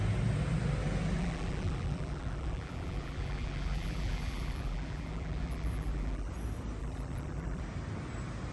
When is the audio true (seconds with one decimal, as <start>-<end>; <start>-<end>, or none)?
0.0-1.2; 6.3-6.8; 7.6-8.5